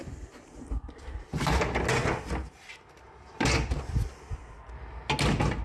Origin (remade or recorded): recorded